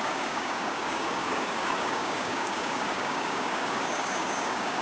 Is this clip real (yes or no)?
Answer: no